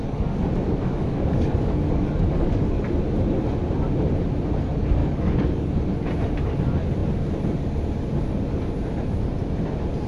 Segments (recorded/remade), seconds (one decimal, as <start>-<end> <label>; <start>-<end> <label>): 0.0-2.9 remade; 2.9-5.0 recorded; 5.0-5.7 remade; 5.7-10.1 recorded